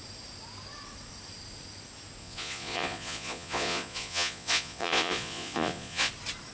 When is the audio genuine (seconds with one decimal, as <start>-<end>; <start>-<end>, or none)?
0.0-2.2; 6.1-6.5